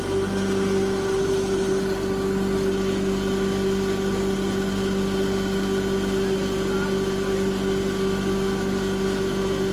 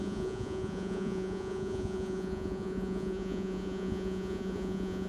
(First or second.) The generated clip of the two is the second